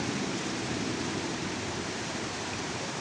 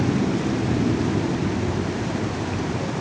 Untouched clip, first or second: second